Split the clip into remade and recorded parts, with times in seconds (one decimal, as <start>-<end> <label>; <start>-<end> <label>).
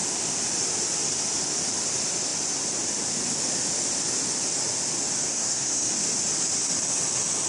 0.0-5.3 recorded; 5.3-5.9 remade; 5.9-7.5 recorded